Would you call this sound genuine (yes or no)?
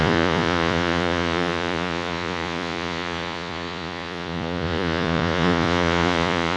no